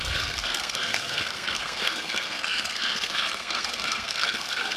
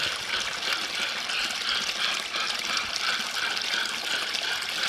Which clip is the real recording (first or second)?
second